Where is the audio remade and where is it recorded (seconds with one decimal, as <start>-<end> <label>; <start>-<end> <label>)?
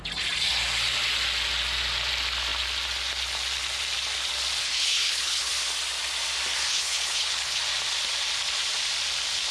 0.0-4.6 recorded; 4.6-5.5 remade; 5.5-6.7 recorded; 6.7-7.6 remade; 7.6-9.5 recorded